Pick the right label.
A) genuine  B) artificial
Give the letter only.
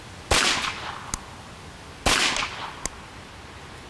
A